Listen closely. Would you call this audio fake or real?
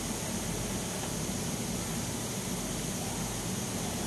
real